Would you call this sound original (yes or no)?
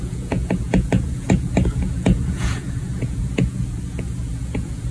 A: no